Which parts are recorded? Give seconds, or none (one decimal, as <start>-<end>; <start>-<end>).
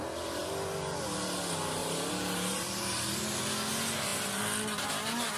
0.0-1.8; 3.2-5.4